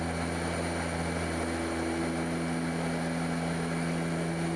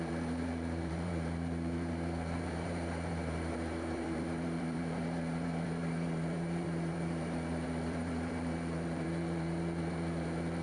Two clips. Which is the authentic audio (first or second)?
first